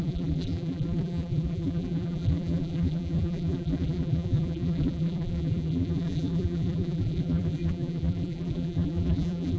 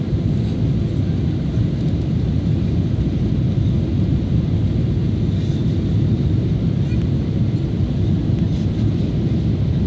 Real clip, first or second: second